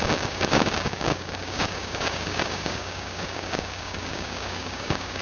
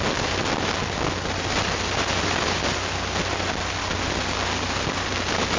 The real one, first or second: second